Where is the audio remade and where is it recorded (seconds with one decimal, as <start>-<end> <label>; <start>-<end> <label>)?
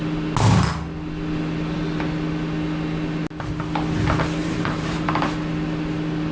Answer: 0.0-4.4 recorded; 4.4-5.2 remade; 5.2-6.3 recorded